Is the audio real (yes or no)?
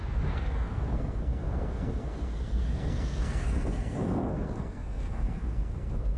no